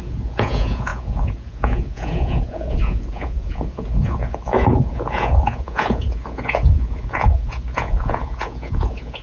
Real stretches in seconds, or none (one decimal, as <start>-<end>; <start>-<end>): none

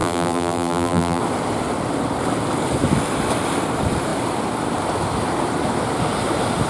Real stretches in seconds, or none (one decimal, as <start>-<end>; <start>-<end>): 1.2-6.7

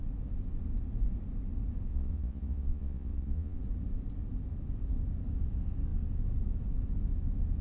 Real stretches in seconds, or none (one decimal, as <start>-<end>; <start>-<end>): 0.0-1.9; 3.6-7.6